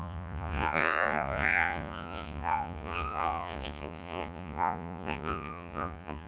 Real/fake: fake